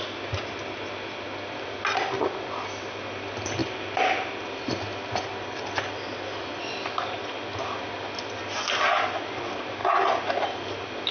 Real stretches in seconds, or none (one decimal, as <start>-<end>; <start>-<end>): 0.0-11.1